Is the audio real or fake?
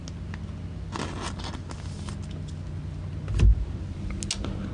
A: real